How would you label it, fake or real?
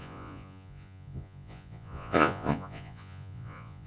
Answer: fake